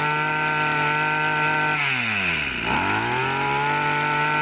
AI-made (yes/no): no